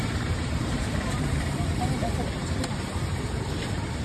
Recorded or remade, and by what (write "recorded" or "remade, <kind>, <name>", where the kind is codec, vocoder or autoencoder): remade, vocoder, BigVGAN v2